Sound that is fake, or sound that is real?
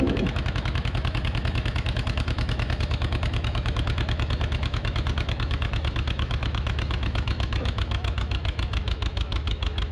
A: fake